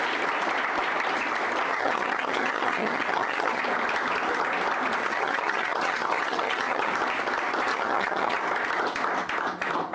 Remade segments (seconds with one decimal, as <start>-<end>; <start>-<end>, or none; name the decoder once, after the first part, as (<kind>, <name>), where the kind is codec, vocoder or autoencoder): 1.7-3.6 (vocoder, HiFi-GAN); 5.0-6.9; 7.7-8.4

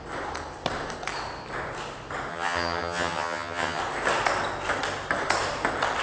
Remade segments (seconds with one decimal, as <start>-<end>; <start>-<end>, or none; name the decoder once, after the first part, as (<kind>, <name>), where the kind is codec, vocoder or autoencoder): 2.3-3.8 (vocoder, HiFi-GAN)